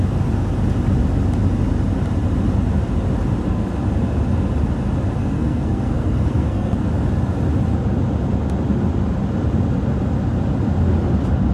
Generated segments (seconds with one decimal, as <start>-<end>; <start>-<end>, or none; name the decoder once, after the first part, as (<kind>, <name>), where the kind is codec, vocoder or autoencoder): 5.2-6.9 (codec, SNAC)